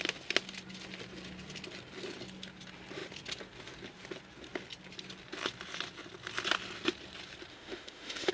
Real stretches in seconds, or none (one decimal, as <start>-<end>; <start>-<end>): 0.0-7.5